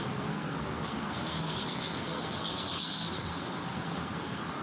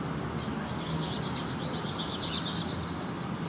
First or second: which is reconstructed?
first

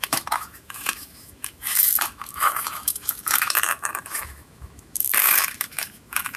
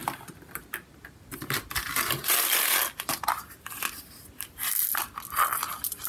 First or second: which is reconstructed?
first